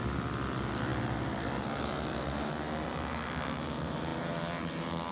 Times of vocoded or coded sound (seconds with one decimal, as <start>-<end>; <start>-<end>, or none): none